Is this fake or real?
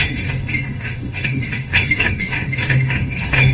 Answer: fake